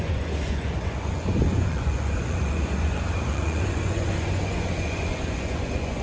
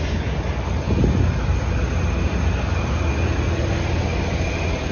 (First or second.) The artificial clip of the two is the first